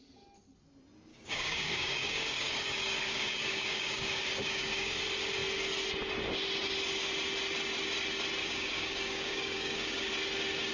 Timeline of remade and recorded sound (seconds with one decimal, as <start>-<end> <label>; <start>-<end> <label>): 0.0-1.1 recorded; 1.1-5.0 remade; 5.0-8.4 recorded; 8.4-10.1 remade; 10.1-10.7 recorded